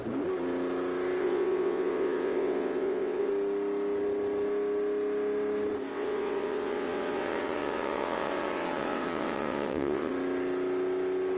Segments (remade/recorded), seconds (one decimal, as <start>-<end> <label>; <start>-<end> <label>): 0.0-1.2 recorded; 1.2-3.3 remade; 3.3-5.9 recorded; 5.9-10.1 remade; 10.1-11.4 recorded